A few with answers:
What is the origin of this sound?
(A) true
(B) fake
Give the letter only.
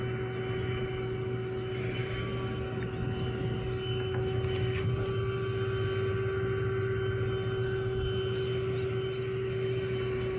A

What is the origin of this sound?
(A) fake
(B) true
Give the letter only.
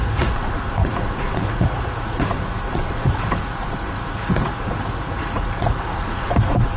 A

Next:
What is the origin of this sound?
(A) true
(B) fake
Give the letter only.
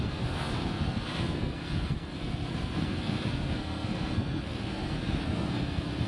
B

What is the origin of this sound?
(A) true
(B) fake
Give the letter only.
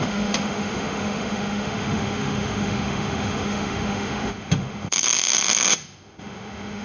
B